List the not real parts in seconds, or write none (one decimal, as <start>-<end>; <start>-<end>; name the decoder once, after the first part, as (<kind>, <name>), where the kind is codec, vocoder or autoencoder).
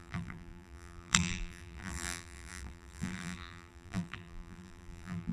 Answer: 0.0-5.3 (vocoder, BigVGAN v2)